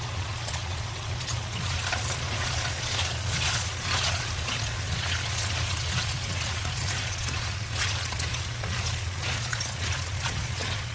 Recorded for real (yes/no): no